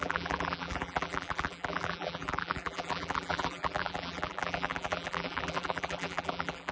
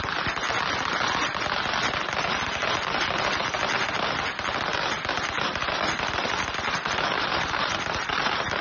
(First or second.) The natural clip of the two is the second